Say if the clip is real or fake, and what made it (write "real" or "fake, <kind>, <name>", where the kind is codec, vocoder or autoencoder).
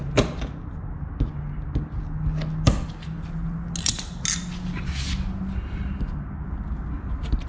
real